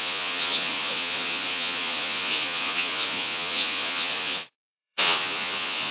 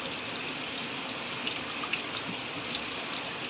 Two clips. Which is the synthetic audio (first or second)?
first